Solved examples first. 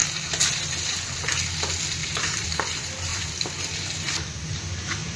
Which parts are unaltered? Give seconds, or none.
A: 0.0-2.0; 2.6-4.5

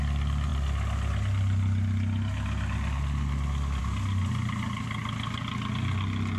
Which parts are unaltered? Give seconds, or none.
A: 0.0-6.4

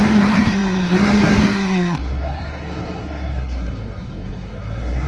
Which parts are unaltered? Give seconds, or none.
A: none

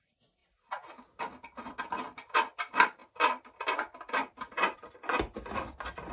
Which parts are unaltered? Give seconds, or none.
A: 0.0-6.1